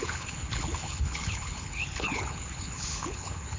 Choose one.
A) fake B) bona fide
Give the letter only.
A